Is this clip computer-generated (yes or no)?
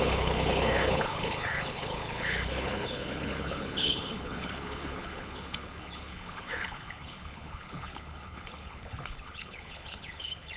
yes